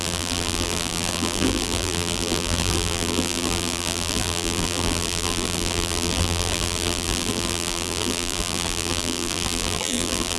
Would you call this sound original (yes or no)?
no